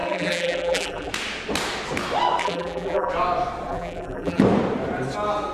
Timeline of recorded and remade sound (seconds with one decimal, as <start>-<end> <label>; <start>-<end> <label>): 0.0-1.1 remade; 1.1-2.4 recorded; 2.4-3.1 remade; 3.1-3.7 recorded; 3.7-4.4 remade; 4.4-5.5 recorded